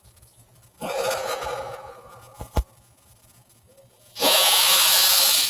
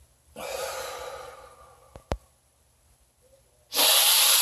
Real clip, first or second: second